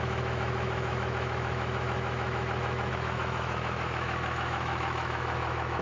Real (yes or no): no